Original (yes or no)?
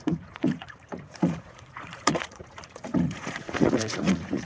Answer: no